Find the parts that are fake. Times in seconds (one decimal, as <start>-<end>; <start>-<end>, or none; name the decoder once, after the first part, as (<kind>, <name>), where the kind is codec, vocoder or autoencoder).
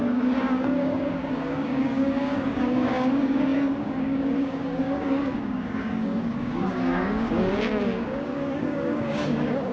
0.0-9.7 (codec, DAC)